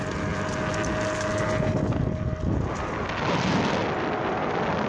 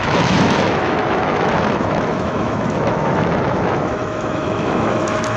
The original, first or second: first